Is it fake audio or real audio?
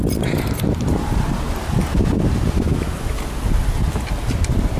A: real